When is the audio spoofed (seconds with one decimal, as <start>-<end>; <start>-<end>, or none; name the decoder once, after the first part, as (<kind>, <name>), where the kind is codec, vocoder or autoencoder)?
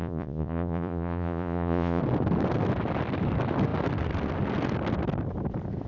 0.0-2.0 (vocoder, Vocos)